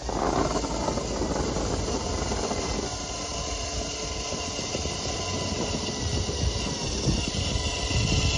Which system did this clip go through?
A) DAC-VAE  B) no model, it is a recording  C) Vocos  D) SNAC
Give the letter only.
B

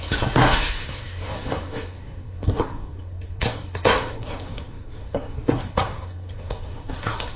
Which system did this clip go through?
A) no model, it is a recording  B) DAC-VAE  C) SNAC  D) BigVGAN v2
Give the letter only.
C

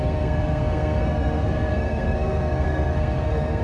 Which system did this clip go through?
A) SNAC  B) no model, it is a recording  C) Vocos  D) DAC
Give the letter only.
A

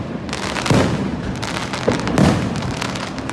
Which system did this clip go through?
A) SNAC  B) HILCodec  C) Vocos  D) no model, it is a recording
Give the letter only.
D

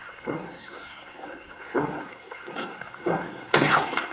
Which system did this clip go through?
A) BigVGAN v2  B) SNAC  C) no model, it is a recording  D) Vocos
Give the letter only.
B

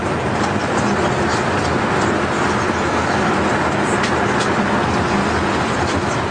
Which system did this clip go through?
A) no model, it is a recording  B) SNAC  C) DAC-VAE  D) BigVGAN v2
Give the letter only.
A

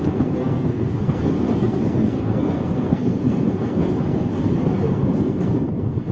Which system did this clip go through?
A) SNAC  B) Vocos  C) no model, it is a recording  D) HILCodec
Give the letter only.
A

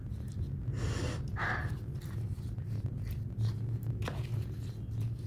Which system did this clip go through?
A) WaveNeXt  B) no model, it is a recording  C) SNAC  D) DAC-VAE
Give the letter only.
B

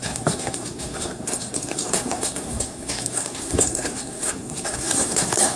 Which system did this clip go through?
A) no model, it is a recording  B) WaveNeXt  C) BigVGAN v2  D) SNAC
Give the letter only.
D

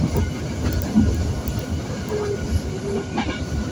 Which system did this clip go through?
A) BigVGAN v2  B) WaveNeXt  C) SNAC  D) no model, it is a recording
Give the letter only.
D